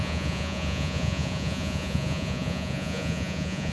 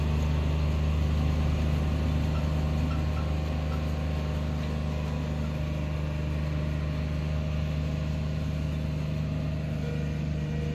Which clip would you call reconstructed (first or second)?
first